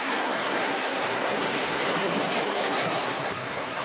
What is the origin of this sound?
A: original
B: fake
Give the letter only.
B